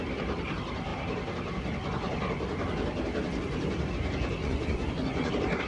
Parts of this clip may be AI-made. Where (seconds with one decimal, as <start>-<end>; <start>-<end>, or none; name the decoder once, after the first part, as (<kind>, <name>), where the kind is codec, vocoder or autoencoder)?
4.4-5.3 (vocoder, Vocos)